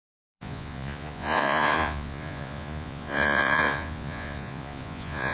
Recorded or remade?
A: remade